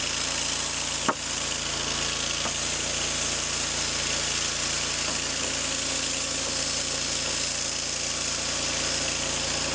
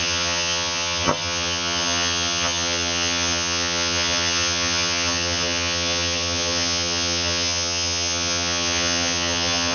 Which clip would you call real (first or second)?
first